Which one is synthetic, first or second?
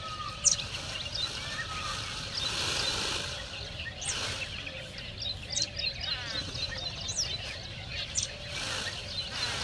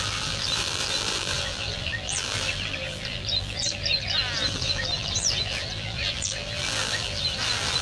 second